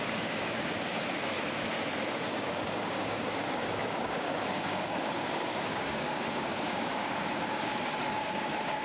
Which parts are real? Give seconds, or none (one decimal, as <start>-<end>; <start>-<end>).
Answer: 0.9-2.1